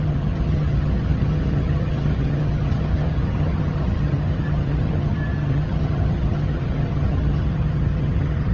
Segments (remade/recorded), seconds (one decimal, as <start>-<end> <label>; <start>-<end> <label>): 0.0-8.5 remade